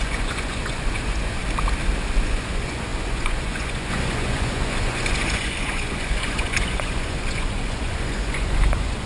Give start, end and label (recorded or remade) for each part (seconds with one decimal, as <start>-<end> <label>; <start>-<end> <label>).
0.0-1.4 remade; 1.4-2.2 recorded; 2.2-9.1 remade